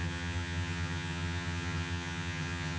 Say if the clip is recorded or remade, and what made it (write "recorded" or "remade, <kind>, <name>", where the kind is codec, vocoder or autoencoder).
remade, vocoder, HiFi-GAN